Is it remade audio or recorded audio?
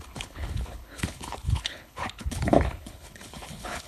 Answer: remade